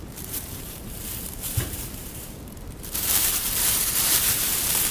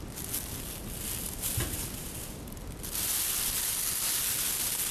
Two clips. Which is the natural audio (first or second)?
second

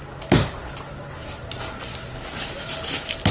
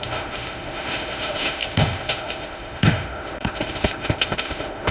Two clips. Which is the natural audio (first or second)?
first